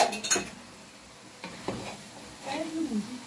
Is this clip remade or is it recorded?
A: recorded